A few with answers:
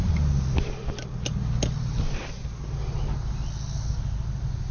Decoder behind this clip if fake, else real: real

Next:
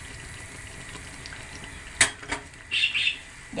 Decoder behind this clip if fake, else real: real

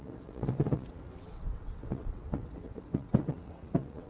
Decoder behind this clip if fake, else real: fake, vocoder, WaveNeXt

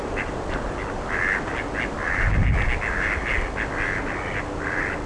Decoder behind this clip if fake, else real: real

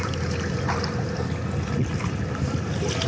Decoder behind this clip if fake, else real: real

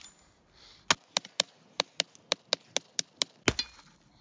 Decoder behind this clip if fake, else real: real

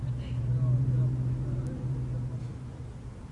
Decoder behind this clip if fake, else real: real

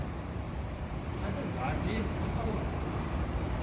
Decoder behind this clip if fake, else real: fake, vocoder, BigVGAN v2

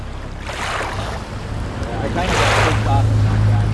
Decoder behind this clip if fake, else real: real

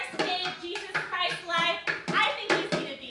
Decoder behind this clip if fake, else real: real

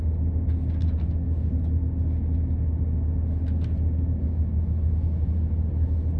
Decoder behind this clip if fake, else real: real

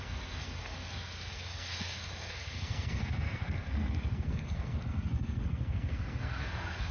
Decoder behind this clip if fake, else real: fake, codec, SNAC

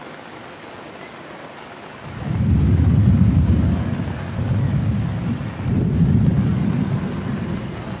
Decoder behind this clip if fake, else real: real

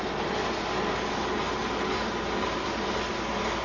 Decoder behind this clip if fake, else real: real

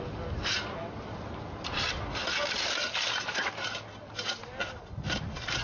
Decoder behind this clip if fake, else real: real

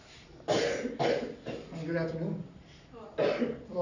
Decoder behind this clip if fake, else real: real